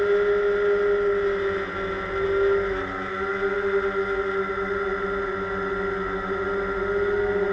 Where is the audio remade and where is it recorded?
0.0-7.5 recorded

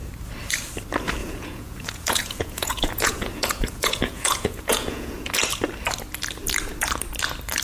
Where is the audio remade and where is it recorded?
0.0-1.2 recorded; 1.2-5.3 remade; 5.3-7.6 recorded

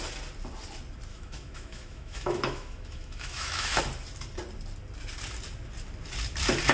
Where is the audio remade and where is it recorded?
0.0-1.1 recorded; 1.1-3.8 remade; 3.8-6.7 recorded

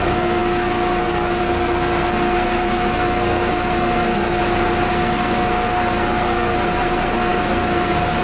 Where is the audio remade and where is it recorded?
0.0-4.4 remade; 4.4-4.9 recorded; 4.9-8.2 remade